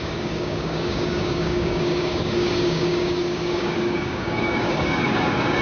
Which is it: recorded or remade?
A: remade